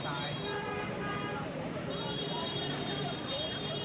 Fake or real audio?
fake